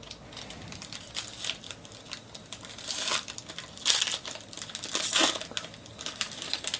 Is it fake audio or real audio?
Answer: real